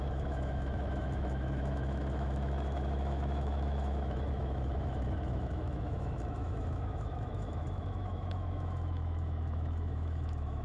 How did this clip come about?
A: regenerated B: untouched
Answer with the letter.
A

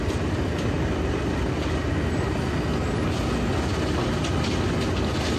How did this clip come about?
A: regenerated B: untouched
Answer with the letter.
B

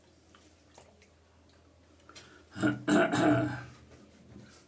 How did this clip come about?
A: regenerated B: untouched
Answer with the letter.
B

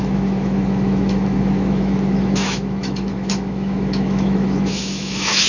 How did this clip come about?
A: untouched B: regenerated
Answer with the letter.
B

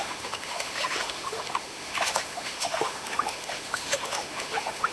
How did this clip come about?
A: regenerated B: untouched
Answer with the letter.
A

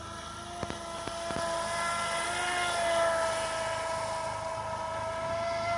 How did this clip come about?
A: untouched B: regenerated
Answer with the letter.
A